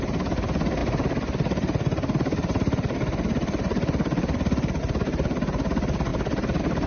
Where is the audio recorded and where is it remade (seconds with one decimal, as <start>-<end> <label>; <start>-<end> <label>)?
0.0-0.8 recorded; 0.8-4.8 remade; 4.8-6.9 recorded